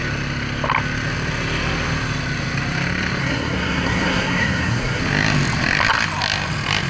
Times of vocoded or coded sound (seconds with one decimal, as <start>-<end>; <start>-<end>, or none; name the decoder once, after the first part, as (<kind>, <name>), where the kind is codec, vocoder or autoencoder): 3.2-5.0 (codec, SNAC)